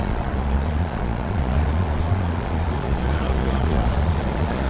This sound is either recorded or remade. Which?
remade